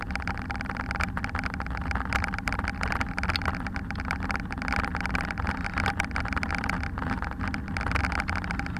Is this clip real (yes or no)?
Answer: yes